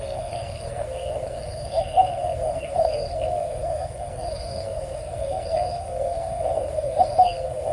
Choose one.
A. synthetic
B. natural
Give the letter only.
A